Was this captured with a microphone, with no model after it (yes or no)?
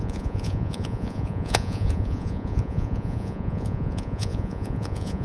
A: no